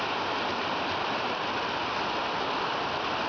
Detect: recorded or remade recorded